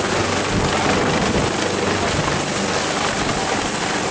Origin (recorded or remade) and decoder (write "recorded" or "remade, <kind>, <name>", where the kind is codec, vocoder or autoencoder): recorded